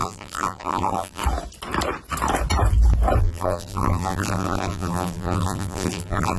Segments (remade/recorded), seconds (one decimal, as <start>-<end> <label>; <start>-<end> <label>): 0.0-1.2 remade; 1.2-3.2 recorded; 3.2-6.4 remade